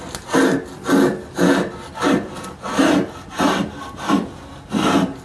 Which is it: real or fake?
real